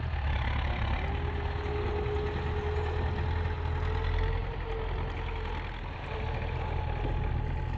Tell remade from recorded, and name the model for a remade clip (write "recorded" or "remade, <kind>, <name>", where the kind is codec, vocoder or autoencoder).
recorded